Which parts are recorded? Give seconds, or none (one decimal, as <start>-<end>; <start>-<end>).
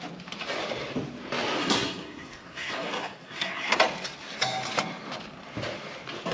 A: 0.0-1.6; 3.8-6.3